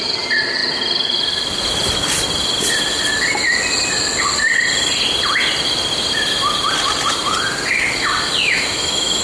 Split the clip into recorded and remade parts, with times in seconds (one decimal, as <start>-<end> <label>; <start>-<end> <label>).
0.0-8.4 recorded; 8.4-9.2 remade